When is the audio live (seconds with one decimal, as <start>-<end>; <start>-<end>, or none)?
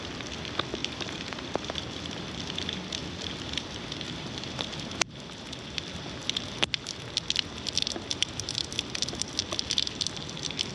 0.0-0.8; 5.1-10.7